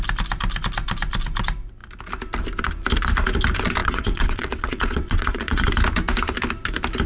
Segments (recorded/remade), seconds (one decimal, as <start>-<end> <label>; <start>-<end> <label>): 0.0-3.8 recorded; 3.8-5.7 remade; 5.7-7.1 recorded